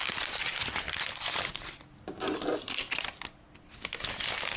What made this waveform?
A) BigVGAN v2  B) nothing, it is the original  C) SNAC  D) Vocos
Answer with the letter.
B